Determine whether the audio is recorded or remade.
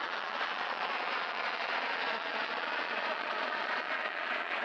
remade